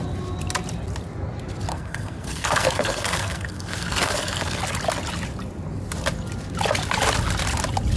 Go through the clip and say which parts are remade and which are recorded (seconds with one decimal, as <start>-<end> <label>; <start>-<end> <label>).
0.0-1.7 recorded; 1.7-4.6 remade; 4.6-8.0 recorded